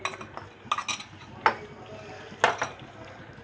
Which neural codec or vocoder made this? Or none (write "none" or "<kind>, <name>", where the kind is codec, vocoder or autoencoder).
none